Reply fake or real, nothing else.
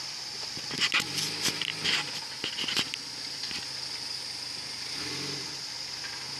real